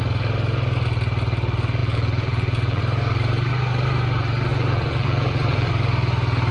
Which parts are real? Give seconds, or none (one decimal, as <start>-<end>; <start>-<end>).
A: 0.0-1.8; 2.8-4.5; 5.7-6.5